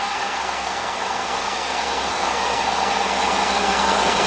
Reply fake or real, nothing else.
fake